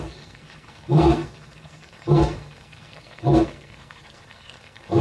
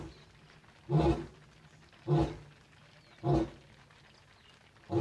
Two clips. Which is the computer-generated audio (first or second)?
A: first